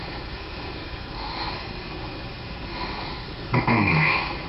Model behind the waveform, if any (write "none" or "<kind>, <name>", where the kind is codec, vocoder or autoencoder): codec, SNAC